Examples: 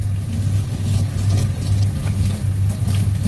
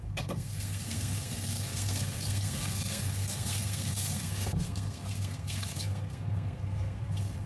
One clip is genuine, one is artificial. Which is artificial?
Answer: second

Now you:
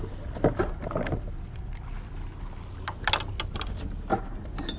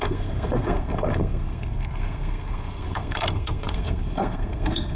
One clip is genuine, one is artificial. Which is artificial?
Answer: second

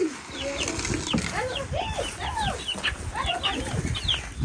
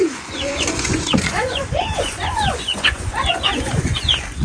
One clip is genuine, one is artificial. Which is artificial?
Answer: second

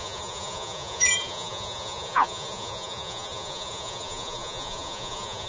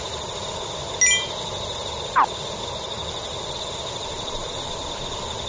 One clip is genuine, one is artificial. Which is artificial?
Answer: first